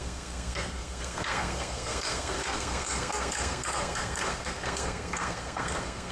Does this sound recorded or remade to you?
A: remade